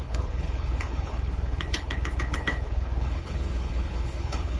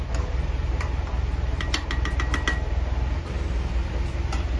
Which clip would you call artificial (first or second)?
first